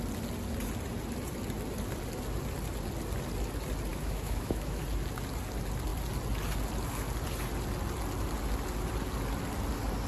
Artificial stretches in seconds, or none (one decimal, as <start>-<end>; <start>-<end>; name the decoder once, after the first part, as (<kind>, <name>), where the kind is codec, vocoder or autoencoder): 3.9-4.8 (autoencoder, DAC-VAE)